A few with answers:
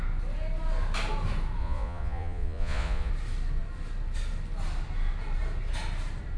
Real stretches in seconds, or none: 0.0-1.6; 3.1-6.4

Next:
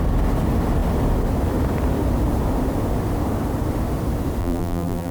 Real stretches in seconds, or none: 0.0-4.4

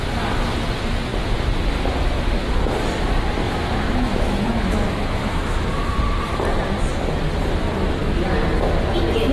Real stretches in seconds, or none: 0.0-3.4; 6.0-9.3

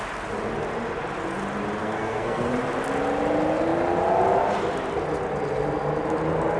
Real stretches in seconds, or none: 0.0-1.8; 2.5-6.6

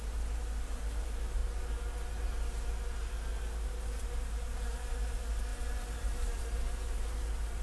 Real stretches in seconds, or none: 0.0-5.5; 6.4-7.6

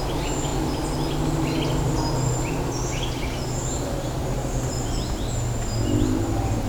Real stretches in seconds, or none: 0.0-6.7

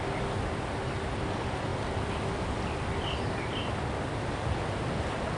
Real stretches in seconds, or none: 0.0-5.4